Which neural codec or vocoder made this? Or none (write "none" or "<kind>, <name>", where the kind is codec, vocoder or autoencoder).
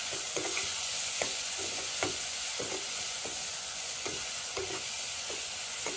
vocoder, Vocos